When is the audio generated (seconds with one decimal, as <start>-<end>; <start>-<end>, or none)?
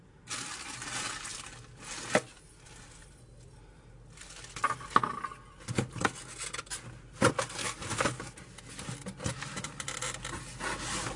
none